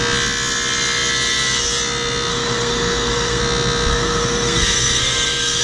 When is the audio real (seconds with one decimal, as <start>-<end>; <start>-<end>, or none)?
0.0-2.3; 3.4-3.9

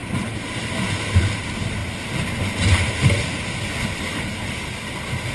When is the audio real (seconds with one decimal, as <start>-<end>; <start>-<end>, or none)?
0.0-5.3

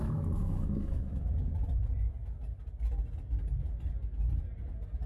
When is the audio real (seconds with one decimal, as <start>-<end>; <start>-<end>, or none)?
1.2-5.1

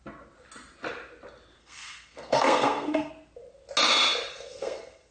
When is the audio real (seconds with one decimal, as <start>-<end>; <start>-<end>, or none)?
0.0-1.6; 3.1-4.3

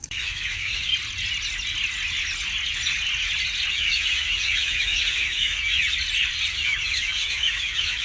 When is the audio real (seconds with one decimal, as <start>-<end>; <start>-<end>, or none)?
0.9-3.7; 5.8-6.5

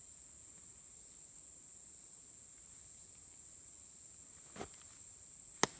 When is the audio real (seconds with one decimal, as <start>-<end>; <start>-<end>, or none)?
0.0-5.8

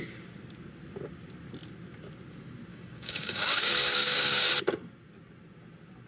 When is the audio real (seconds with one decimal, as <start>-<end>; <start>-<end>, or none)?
0.0-2.7; 4.5-6.1

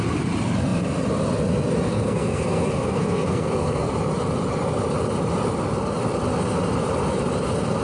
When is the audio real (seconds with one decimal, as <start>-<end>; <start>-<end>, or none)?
0.0-1.9; 3.9-7.8